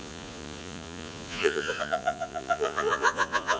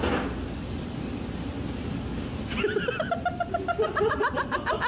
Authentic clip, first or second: second